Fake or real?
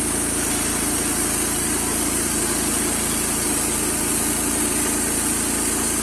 real